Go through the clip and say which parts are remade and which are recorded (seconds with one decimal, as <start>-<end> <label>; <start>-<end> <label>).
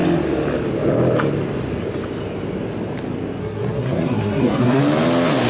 0.0-3.4 recorded; 3.4-4.8 remade; 4.8-5.5 recorded